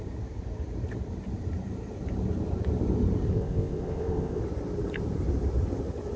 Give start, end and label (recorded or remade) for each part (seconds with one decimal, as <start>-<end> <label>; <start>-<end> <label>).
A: 0.0-3.3 recorded; 3.3-4.4 remade; 4.4-6.2 recorded